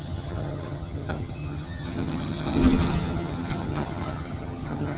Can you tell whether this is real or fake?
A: fake